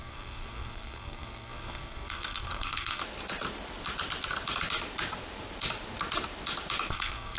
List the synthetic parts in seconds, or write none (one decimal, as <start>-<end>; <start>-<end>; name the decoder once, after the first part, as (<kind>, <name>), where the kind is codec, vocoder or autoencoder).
0.0-3.0 (codec, SNAC); 6.9-7.4